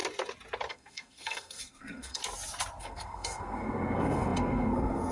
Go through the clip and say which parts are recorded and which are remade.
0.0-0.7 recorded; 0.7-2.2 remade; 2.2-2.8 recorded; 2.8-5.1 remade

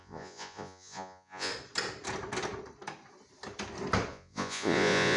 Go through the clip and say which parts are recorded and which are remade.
0.0-1.5 remade; 1.5-4.1 recorded; 4.1-5.2 remade

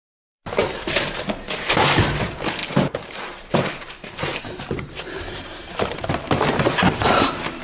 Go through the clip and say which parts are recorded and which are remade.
0.0-7.6 remade